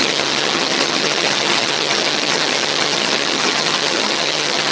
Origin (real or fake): fake